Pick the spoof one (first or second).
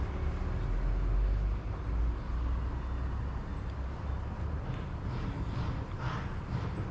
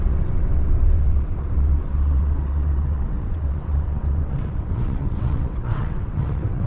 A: second